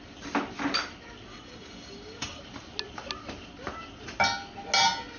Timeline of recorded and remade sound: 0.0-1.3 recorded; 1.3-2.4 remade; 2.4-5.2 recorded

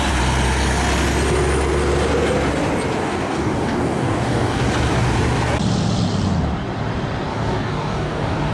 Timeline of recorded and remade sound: 0.0-3.0 recorded; 3.0-4.7 remade; 4.7-7.3 recorded; 7.3-8.5 remade

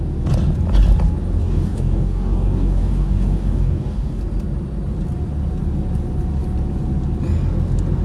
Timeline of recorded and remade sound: 0.0-1.4 recorded; 1.4-4.2 remade; 4.2-8.0 recorded

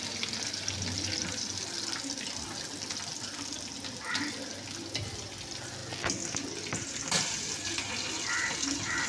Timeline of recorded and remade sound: 0.0-9.1 recorded

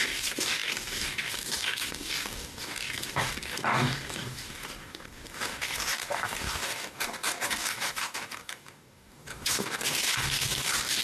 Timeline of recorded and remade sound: 0.0-11.0 remade

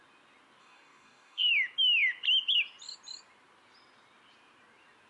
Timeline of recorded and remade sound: 0.0-0.6 recorded; 0.6-1.5 remade; 1.5-5.1 recorded